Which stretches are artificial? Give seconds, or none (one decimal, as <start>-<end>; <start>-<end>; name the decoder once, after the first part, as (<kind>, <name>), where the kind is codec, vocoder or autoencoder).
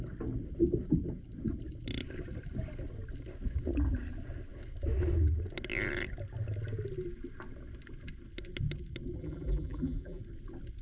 9.2-10.2 (vocoder, BigVGAN v2)